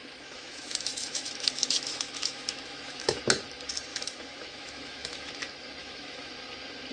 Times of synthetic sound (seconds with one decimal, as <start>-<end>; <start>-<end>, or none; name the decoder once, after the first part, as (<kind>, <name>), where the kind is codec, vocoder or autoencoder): 0.0-3.2 (autoencoder, DAC-VAE); 3.9-5.3; 5.8-6.3